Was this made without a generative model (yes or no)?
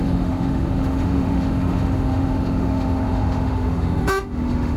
no